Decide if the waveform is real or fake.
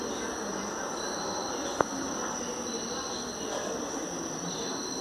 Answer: real